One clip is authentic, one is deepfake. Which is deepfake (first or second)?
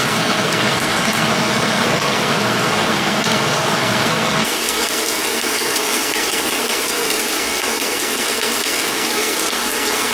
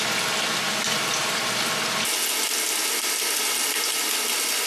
first